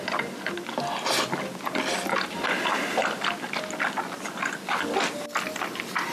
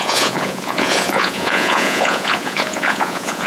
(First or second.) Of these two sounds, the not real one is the second